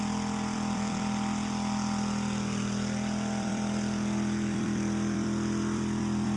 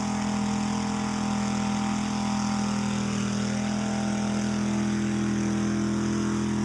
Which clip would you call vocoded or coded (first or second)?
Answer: first